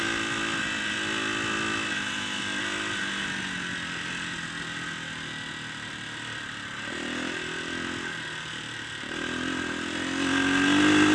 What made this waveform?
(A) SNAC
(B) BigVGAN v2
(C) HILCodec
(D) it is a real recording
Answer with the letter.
D